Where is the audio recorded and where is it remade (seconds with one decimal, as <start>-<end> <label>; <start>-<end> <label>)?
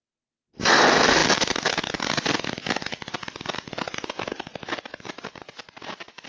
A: 0.0-0.7 recorded; 0.7-1.2 remade; 1.2-4.8 recorded; 4.8-6.3 remade